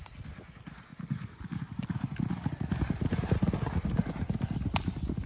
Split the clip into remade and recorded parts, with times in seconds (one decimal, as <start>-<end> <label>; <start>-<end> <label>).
0.0-5.3 recorded